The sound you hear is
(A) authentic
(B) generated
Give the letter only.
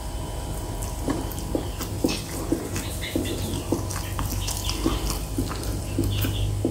A